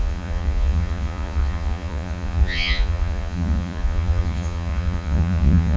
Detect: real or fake fake